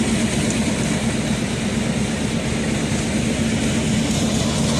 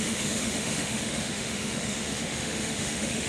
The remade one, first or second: second